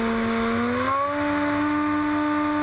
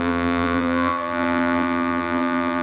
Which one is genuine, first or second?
first